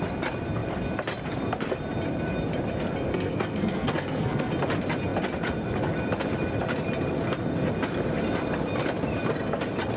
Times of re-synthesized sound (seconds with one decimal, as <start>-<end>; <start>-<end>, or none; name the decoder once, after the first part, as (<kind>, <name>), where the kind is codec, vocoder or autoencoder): 3.1-4.5 (codec, SNAC)